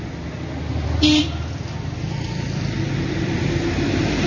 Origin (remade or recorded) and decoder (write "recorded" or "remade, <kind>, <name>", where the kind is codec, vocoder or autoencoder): recorded